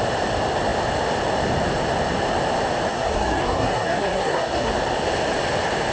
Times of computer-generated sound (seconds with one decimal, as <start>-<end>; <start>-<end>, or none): 2.9-4.7